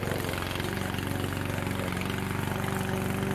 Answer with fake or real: real